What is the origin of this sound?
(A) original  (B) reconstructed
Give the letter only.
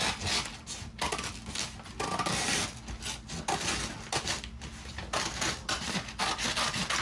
A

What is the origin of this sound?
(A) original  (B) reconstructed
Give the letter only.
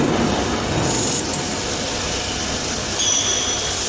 A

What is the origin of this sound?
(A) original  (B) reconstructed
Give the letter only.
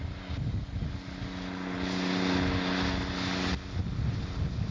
A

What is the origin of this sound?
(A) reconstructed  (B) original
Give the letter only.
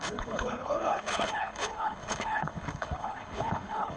A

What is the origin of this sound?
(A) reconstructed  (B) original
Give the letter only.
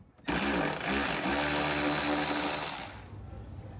B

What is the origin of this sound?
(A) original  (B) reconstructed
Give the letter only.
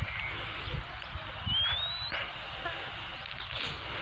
A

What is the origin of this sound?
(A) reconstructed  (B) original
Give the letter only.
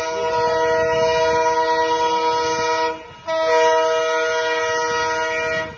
B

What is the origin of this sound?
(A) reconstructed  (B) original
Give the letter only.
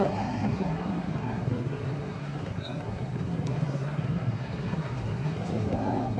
A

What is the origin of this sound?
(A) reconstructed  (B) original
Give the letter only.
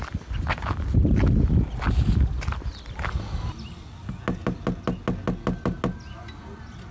B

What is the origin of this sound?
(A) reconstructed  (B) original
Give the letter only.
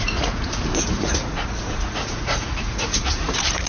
A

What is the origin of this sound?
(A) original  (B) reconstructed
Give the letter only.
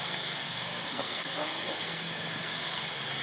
B